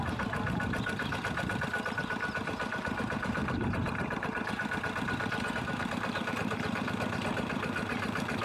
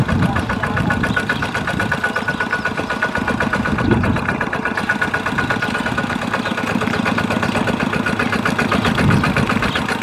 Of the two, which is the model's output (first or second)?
first